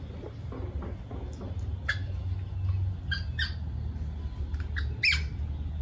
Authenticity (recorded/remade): recorded